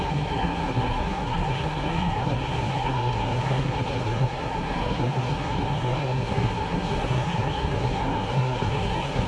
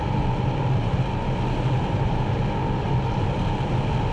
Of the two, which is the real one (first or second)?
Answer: second